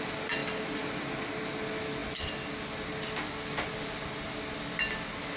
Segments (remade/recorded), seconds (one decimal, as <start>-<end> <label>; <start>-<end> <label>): 0.0-5.4 recorded